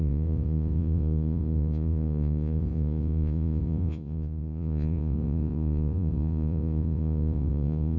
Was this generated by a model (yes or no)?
yes